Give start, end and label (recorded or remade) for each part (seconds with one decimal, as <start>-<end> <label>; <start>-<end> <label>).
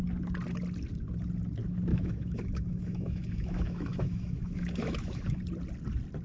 0.0-1.9 recorded; 1.9-5.4 remade; 5.4-6.2 recorded